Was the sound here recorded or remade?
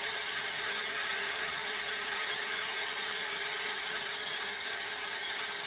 remade